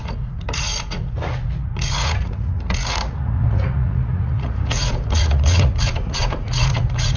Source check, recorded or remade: remade